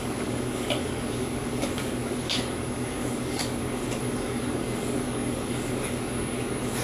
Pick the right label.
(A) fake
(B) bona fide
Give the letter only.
A